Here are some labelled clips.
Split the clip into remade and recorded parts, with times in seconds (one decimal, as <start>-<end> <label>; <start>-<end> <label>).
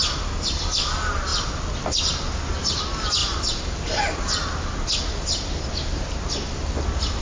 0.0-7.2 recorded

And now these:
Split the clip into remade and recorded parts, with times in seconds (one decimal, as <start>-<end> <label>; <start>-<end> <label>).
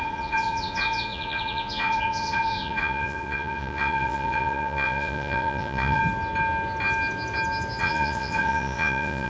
0.0-6.0 remade; 6.0-7.8 recorded; 7.8-9.3 remade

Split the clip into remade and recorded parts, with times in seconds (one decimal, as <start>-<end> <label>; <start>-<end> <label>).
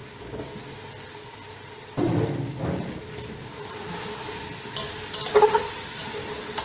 0.0-0.5 remade; 0.5-6.6 recorded